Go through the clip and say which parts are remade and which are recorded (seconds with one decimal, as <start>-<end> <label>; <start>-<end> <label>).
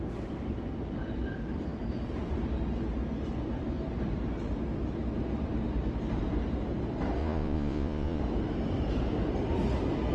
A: 0.0-7.2 recorded; 7.2-8.2 remade; 8.2-10.1 recorded